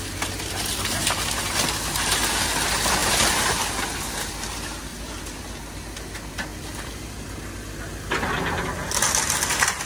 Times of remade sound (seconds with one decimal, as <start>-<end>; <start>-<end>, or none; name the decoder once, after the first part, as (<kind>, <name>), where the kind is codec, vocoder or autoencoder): 3.0-4.3 (vocoder, BigVGAN v2); 4.9-5.4